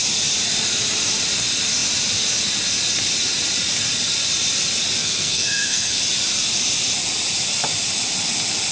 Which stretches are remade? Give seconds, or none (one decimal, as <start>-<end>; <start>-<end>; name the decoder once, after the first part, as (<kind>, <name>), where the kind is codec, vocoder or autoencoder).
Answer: 5.0-6.0 (codec, SNAC)